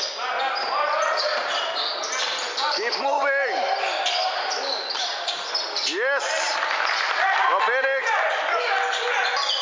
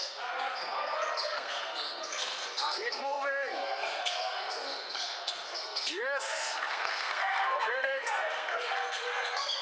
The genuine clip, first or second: first